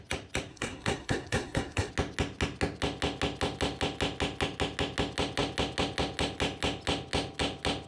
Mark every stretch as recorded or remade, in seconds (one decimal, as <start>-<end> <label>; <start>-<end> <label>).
0.0-0.5 recorded; 0.5-1.9 remade; 1.9-7.9 recorded